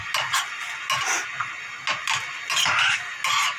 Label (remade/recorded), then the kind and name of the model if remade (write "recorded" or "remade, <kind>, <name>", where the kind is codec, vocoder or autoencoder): recorded